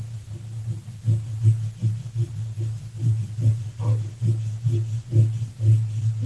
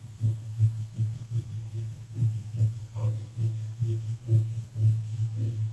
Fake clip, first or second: second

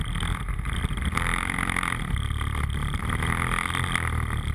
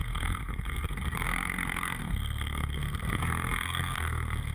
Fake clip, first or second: second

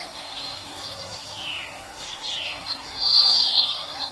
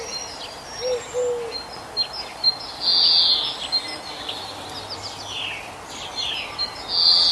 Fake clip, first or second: first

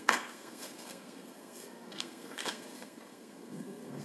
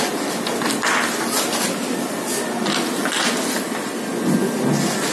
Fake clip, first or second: first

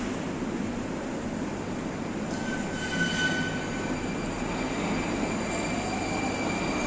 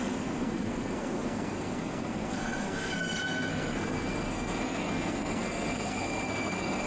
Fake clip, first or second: second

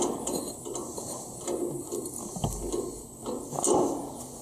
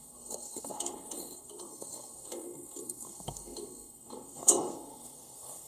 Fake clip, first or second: second